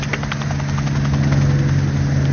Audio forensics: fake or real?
real